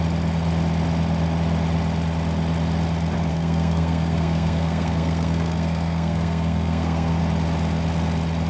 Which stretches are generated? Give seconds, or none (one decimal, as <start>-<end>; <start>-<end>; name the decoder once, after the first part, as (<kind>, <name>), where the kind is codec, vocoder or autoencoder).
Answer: 3.3-7.2 (codec, SNAC)